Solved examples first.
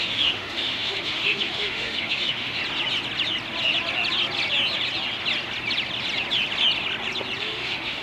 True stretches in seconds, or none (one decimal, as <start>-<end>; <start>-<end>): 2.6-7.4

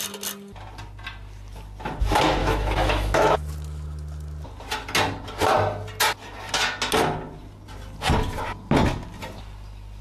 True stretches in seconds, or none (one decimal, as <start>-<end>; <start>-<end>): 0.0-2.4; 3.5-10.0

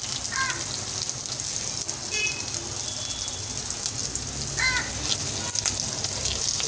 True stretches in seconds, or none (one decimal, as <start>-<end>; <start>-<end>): 0.0-6.7